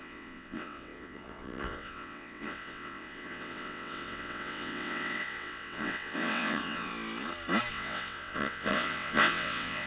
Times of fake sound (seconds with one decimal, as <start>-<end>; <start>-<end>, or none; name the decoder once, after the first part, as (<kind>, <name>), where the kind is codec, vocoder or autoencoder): 0.0-6.9 (vocoder, WaveNeXt); 7.7-9.9